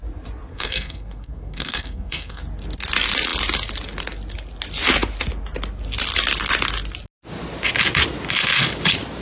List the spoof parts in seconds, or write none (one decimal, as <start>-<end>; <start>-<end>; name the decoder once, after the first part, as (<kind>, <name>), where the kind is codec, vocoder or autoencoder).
0.5-2.4 (codec, SNAC)